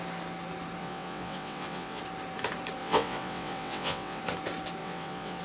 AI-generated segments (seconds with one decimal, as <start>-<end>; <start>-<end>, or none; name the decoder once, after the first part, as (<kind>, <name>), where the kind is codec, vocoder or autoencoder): 0.8-2.0 (vocoder, WaveNeXt); 2.8-4.2; 4.8-5.4